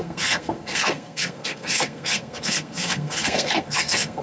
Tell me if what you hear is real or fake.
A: fake